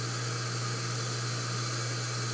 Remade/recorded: recorded